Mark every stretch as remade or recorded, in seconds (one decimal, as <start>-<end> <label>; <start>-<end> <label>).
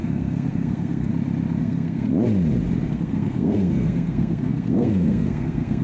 0.0-1.1 remade; 1.1-1.6 recorded; 1.6-2.1 remade; 2.1-2.9 recorded; 2.9-5.8 remade